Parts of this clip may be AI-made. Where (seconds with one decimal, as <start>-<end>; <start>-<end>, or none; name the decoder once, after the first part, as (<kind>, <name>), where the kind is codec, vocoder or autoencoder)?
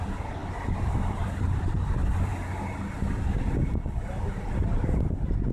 0.0-2.3 (vocoder, BigVGAN v2); 3.2-5.5